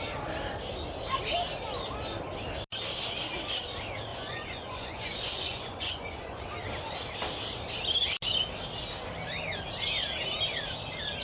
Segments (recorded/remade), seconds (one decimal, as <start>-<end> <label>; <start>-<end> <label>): 0.0-4.1 recorded; 4.1-6.4 remade; 6.4-11.2 recorded